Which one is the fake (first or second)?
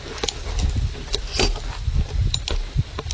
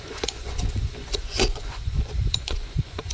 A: second